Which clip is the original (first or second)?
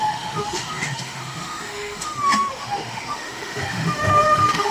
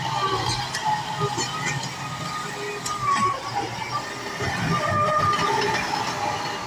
second